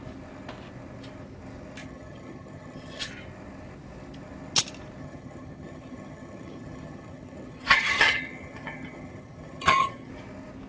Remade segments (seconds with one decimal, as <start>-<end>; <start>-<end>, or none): 1.8-3.1; 5.0-10.1